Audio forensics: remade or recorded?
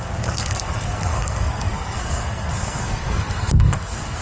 remade